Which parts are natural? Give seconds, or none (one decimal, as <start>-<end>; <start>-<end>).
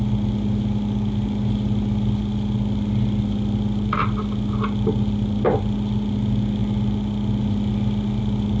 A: 0.0-8.6